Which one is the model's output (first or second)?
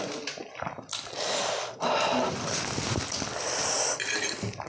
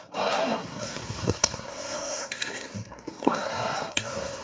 second